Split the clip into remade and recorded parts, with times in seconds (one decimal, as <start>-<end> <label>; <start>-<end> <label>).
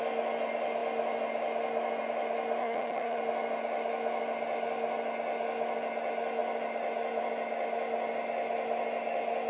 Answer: 0.0-2.6 recorded; 2.6-3.2 remade; 3.2-9.5 recorded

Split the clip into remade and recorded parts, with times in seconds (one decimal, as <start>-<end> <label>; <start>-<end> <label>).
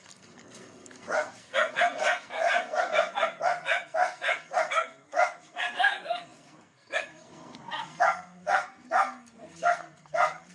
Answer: 0.0-10.5 remade